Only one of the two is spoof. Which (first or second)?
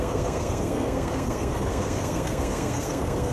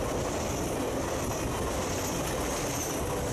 first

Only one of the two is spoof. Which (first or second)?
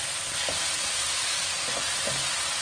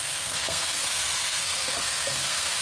second